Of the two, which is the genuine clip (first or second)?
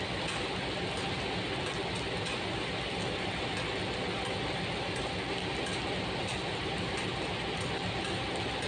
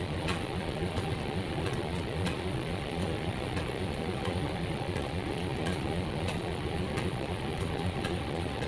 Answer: first